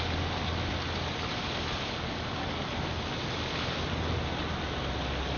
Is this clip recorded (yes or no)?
yes